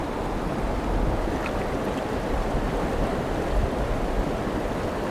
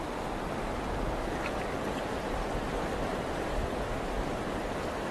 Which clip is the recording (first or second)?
first